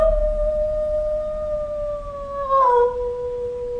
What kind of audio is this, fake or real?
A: real